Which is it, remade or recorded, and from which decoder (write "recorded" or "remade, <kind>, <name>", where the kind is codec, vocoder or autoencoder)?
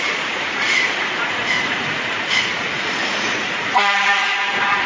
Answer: remade, vocoder, Vocos